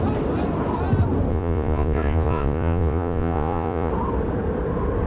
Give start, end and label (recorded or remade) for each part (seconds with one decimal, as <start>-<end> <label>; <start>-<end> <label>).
0.0-1.3 recorded; 1.3-3.9 remade; 3.9-5.1 recorded